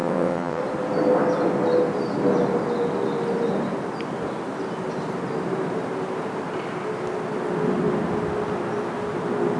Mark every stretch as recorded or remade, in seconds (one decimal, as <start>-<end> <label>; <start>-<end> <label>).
0.0-0.6 remade; 0.6-9.6 recorded